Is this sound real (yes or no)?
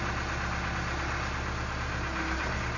yes